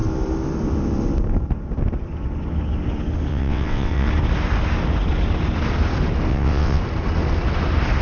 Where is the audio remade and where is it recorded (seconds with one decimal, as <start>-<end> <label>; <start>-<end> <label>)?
0.0-3.3 recorded; 3.3-4.1 remade; 4.1-6.3 recorded; 6.3-6.8 remade; 6.8-8.0 recorded